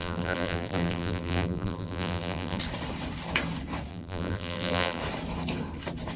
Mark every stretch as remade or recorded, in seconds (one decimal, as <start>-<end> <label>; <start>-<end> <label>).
0.0-2.6 remade; 2.6-3.9 recorded; 3.9-5.0 remade; 5.0-6.2 recorded